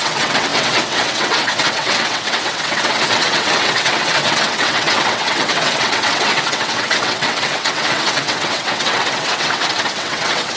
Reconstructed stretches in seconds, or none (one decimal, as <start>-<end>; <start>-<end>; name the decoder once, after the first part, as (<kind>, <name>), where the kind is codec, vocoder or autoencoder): 0.0-10.6 (vocoder, WaveNeXt)